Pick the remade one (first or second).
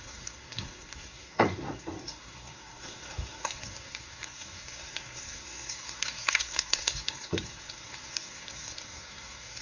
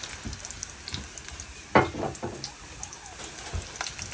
first